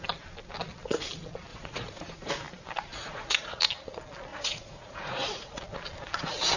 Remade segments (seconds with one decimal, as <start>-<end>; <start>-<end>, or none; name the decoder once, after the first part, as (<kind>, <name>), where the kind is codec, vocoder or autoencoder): 1.5-2.3 (vocoder, Vocos); 2.9-3.6; 4.3-5.6

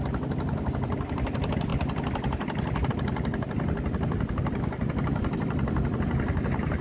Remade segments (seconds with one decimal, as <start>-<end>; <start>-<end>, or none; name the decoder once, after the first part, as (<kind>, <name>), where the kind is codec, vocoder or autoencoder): none

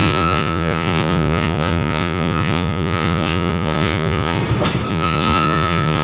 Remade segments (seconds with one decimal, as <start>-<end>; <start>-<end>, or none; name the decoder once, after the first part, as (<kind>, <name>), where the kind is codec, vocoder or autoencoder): 0.0-4.4 (vocoder, Vocos); 4.9-6.0

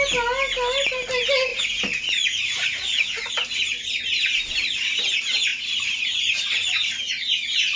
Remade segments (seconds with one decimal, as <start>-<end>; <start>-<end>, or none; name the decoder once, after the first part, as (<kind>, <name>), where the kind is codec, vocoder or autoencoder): 1.5-3.3 (vocoder, Vocos)

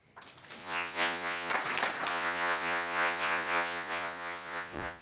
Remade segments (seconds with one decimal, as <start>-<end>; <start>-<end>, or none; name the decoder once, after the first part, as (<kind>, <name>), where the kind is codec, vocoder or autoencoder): 0.6-1.5 (vocoder, Vocos); 2.1-5.0

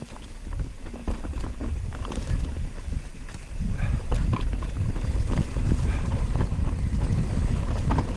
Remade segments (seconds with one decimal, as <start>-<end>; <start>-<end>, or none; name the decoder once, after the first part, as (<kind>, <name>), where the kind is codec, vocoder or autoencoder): 1.0-2.4 (vocoder, BigVGAN v2); 3.1-4.2